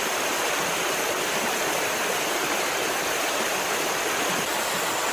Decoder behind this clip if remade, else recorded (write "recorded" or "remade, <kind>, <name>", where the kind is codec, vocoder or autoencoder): recorded